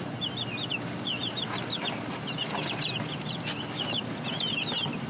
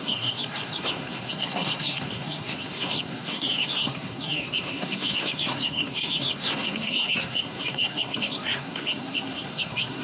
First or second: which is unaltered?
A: first